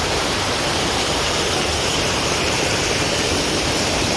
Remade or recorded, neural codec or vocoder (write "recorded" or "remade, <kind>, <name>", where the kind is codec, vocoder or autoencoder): remade, vocoder, BigVGAN v2